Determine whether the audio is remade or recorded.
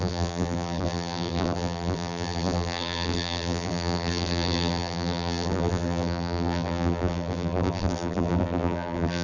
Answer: remade